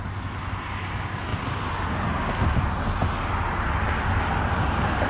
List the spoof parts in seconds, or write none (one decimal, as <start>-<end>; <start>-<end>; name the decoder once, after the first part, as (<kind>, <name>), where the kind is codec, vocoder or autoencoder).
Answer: none